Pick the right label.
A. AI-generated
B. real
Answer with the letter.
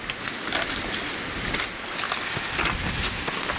B